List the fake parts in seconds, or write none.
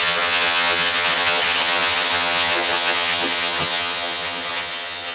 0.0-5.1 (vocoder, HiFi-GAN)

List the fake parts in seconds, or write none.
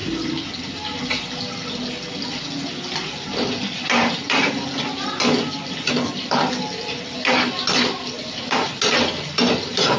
none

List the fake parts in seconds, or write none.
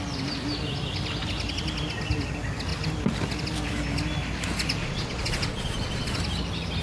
4.8-6.2 (vocoder, Vocos)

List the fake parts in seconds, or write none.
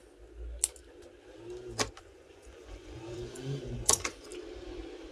2.0-4.3 (vocoder, Vocos)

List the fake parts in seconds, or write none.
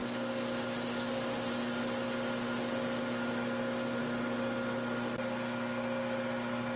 none